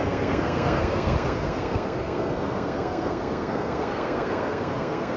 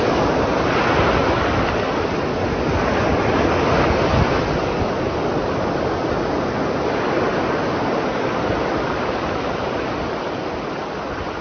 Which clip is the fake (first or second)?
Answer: first